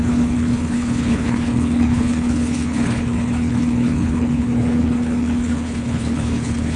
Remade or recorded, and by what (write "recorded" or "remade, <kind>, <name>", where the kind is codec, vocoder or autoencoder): remade, codec, HILCodec